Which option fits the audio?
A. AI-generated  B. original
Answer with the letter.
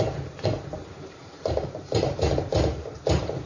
A